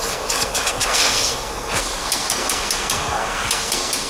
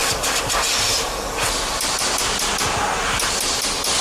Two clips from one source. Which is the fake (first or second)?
first